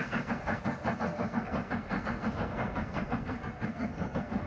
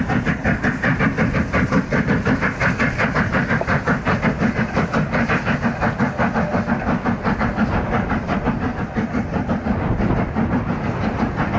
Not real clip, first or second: first